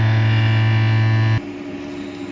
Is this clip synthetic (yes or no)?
no